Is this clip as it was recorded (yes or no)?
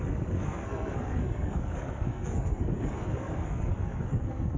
no